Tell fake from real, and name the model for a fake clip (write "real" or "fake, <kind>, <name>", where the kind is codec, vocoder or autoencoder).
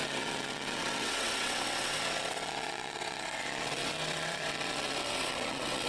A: fake, vocoder, WaveNeXt